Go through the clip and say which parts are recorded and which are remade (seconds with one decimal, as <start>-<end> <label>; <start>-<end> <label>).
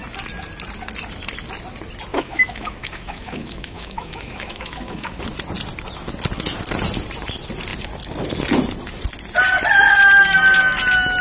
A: 0.0-2.1 recorded; 2.1-5.2 remade; 5.2-11.2 recorded